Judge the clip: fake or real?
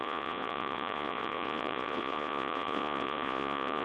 fake